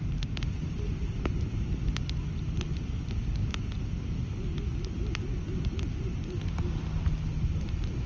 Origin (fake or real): real